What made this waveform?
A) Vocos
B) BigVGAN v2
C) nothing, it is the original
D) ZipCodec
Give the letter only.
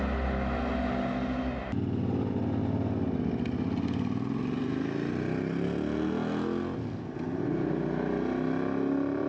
C